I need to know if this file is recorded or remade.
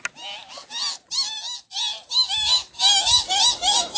recorded